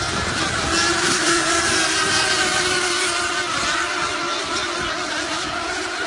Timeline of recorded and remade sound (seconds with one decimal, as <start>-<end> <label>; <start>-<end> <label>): 0.0-1.0 recorded; 1.0-1.5 remade; 1.5-6.1 recorded